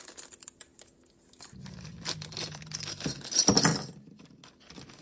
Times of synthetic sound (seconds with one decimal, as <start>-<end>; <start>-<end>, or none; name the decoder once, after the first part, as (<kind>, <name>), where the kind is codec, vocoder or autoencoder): none